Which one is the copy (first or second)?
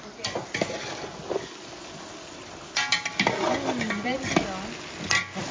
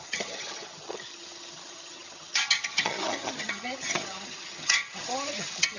second